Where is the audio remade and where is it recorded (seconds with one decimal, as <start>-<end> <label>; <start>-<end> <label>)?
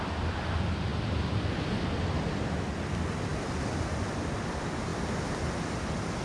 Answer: 0.0-6.2 recorded